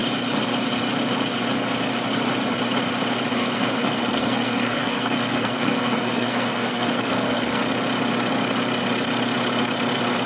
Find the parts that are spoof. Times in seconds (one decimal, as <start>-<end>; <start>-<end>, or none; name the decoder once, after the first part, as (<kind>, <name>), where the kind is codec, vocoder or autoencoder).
3.3-7.6 (codec, SNAC)